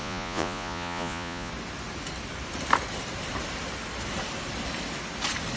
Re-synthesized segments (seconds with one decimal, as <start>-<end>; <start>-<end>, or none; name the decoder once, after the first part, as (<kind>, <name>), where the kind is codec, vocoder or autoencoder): 0.0-1.5 (vocoder, Vocos)